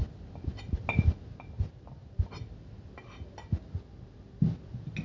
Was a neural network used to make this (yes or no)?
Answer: no